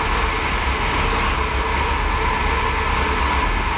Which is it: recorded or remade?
recorded